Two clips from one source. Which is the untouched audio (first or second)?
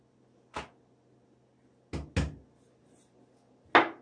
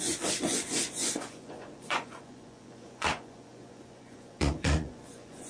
first